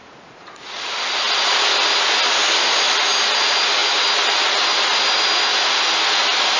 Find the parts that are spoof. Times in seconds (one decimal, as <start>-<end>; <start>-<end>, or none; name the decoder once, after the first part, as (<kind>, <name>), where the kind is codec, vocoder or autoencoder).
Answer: 0.0-0.9 (vocoder, Vocos)